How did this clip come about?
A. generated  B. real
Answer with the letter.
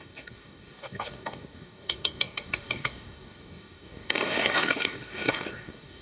A